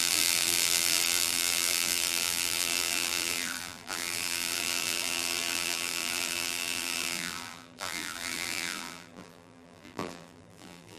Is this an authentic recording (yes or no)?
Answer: no